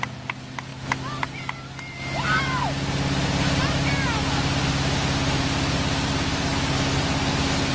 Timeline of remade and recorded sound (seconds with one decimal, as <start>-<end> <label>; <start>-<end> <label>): 0.0-7.7 recorded